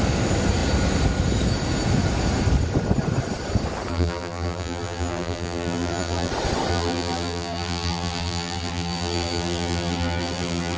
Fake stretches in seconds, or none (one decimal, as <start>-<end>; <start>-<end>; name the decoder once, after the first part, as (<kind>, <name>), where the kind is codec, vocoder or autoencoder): 3.9-6.3 (vocoder, BigVGAN v2); 6.7-10.8

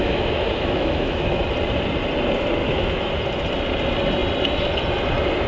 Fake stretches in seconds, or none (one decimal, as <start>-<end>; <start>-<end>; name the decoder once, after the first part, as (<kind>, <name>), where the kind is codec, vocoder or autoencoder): 0.0-1.4 (autoencoder, DAC-VAE); 2.6-3.1

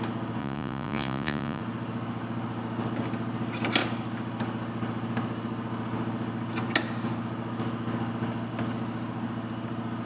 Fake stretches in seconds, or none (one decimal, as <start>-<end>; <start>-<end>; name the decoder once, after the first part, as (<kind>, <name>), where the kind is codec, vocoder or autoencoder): 0.4-1.6 (vocoder, Vocos)

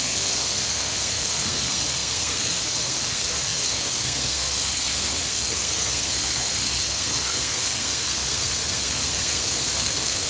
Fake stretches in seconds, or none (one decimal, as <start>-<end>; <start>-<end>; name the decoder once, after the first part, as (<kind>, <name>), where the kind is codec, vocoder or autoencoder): 0.0-10.3 (codec, SNAC)

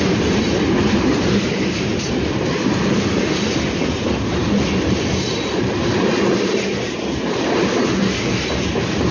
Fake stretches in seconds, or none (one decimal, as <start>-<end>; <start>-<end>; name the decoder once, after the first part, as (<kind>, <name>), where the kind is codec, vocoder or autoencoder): none

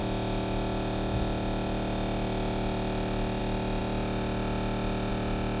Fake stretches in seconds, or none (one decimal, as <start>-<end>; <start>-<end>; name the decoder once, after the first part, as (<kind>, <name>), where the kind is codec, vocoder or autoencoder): none

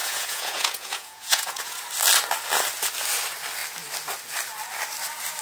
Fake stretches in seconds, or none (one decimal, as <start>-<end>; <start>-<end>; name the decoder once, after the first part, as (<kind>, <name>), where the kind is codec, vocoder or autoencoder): 0.0-1.8 (vocoder, Vocos)

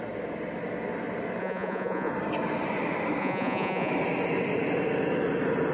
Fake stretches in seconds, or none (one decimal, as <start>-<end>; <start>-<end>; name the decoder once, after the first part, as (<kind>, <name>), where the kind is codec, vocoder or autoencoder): 1.4-2.1 (vocoder, Vocos); 3.2-3.9